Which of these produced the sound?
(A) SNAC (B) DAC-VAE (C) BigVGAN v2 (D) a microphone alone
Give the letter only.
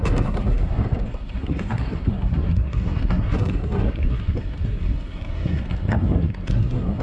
A